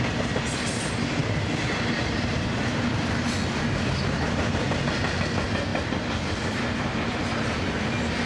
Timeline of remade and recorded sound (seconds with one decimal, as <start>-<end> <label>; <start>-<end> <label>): 0.0-1.2 recorded; 1.2-4.0 remade; 4.0-5.7 recorded; 5.7-7.5 remade; 7.5-8.3 recorded

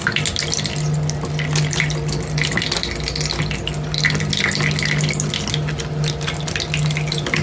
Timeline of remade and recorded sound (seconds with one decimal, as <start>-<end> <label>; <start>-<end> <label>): 0.0-7.4 recorded

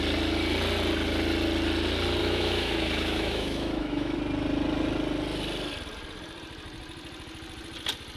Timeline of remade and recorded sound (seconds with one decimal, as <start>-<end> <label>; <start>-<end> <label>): 0.0-2.2 recorded; 2.2-4.2 remade; 4.2-8.2 recorded

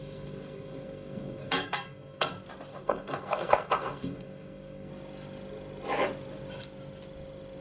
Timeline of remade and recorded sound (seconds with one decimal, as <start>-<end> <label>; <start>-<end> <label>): 0.0-2.3 remade; 2.3-2.7 recorded; 2.7-4.9 remade; 4.9-7.6 recorded